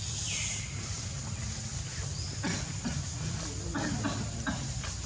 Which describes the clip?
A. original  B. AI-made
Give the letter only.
A